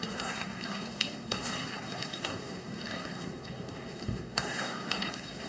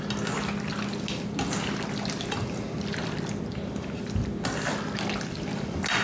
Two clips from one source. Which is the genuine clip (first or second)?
second